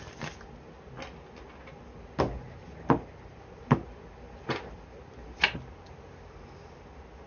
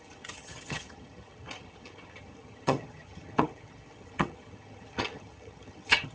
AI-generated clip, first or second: second